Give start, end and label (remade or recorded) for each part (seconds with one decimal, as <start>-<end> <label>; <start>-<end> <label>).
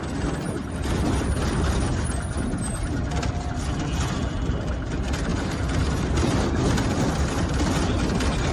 0.0-5.3 recorded; 5.3-8.0 remade; 8.0-8.5 recorded